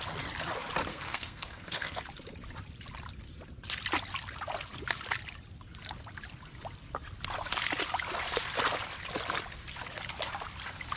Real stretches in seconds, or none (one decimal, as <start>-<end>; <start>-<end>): 0.0-0.9; 2.0-11.0

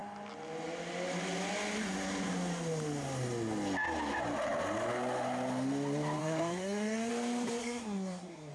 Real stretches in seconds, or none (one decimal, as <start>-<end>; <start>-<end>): 0.0-6.2; 7.1-7.6